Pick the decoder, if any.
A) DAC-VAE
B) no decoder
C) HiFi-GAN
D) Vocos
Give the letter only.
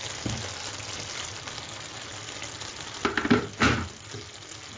B